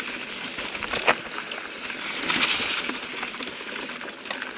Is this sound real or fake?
real